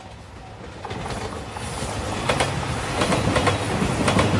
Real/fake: real